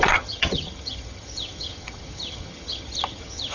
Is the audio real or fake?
fake